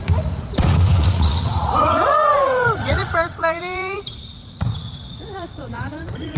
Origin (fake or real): fake